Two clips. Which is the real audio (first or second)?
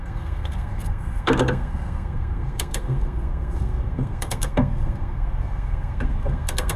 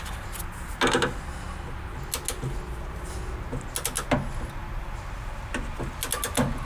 second